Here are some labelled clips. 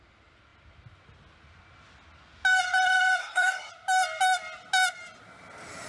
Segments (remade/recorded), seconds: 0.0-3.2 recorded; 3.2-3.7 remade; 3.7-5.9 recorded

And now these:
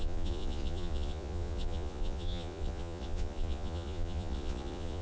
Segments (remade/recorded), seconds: 0.0-5.0 remade

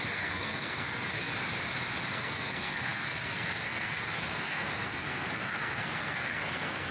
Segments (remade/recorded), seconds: 0.0-1.3 remade; 1.3-2.1 recorded; 2.1-6.9 remade

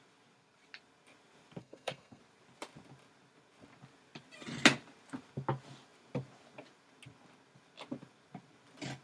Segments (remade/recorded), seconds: 0.0-1.6 recorded; 1.6-2.2 remade; 2.2-9.0 recorded